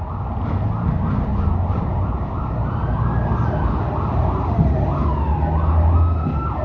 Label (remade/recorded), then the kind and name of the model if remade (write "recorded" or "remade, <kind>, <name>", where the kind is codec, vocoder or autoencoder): recorded